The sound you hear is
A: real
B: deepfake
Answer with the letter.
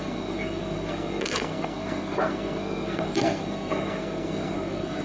B